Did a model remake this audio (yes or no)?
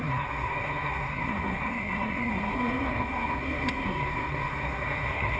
yes